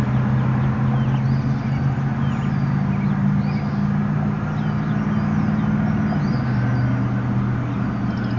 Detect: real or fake real